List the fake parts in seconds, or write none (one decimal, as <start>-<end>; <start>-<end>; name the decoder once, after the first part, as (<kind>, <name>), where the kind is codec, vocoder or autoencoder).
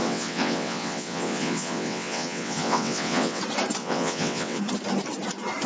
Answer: 0.0-3.4 (vocoder, WaveNeXt); 3.8-4.6